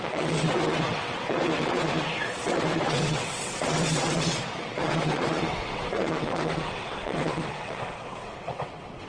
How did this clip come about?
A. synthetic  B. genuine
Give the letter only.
A